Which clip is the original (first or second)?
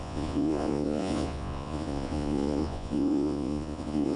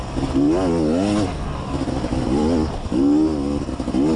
second